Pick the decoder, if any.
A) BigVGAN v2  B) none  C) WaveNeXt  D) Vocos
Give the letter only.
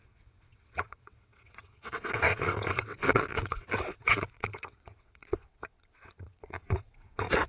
C